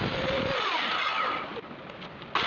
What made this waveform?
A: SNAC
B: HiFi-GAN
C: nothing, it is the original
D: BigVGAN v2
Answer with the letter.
C